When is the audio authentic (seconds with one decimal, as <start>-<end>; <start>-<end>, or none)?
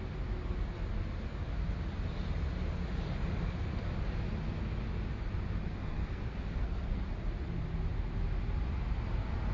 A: 0.0-5.6; 7.0-9.5